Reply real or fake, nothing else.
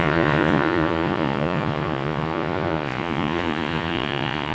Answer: fake